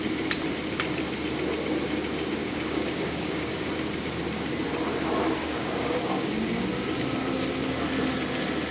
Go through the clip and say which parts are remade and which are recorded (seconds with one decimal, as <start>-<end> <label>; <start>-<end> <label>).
0.0-2.4 recorded; 2.4-3.7 remade; 3.7-5.4 recorded; 5.4-6.3 remade; 6.3-8.7 recorded